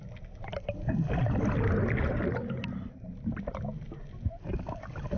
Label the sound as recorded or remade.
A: recorded